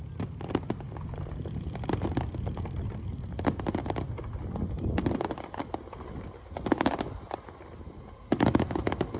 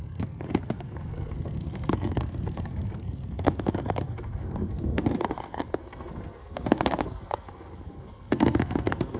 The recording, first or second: first